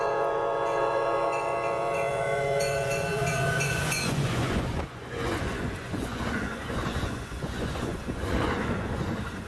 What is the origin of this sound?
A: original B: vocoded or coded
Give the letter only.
B